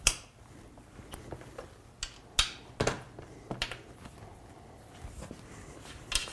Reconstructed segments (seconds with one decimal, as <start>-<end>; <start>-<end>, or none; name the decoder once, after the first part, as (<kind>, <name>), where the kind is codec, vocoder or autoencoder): none